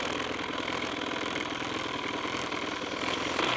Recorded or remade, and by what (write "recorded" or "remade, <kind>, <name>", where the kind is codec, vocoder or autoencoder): recorded